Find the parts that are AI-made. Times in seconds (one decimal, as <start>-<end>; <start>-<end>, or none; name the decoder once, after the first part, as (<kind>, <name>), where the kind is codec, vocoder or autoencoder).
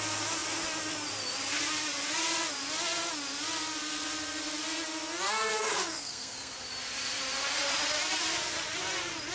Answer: 5.5-6.5 (codec, SNAC)